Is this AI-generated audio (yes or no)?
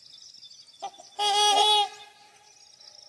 no